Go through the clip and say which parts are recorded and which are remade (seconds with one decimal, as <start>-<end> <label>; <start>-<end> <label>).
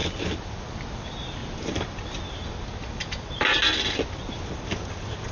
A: 0.0-1.4 recorded; 1.4-2.8 remade; 2.8-5.3 recorded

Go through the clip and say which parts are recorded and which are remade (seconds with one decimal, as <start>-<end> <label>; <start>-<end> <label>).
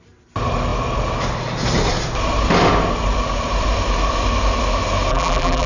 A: 0.0-5.1 recorded; 5.1-5.7 remade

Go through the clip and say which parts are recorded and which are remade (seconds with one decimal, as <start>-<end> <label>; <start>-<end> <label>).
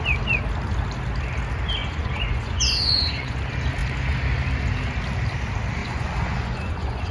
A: 0.0-1.8 recorded; 1.8-3.4 remade; 3.4-5.8 recorded; 5.8-7.1 remade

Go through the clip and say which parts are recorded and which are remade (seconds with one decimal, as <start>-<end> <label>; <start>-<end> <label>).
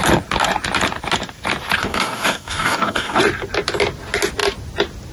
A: 0.0-1.8 recorded; 1.8-3.2 remade; 3.2-5.1 recorded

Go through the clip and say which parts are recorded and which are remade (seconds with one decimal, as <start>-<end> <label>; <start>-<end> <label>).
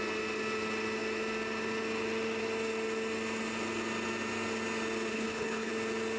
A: 0.0-5.1 recorded; 5.1-5.7 remade; 5.7-6.2 recorded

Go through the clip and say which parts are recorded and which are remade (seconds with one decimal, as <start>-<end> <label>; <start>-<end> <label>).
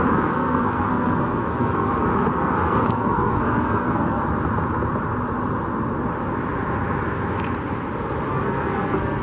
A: 0.0-4.2 remade; 4.2-8.3 recorded; 8.3-9.2 remade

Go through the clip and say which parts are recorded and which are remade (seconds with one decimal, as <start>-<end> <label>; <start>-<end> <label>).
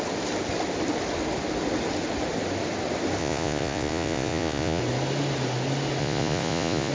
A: 0.0-3.2 recorded; 3.2-4.8 remade; 4.8-6.0 recorded; 6.0-6.9 remade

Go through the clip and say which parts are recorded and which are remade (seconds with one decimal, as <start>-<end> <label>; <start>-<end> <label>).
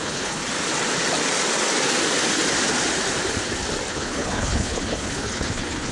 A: 0.0-0.4 remade; 0.4-3.9 recorded; 3.9-5.9 remade